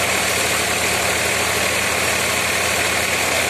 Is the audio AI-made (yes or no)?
no